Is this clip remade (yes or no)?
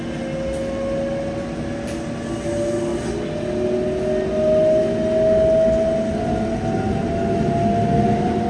no